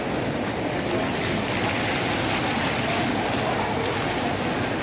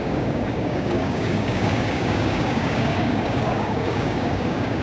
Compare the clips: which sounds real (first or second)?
first